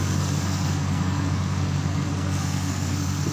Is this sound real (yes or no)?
no